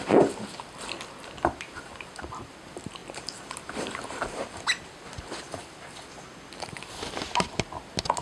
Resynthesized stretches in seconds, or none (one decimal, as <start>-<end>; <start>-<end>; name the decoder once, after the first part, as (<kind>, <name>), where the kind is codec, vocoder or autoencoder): none